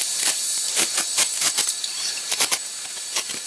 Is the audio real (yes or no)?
no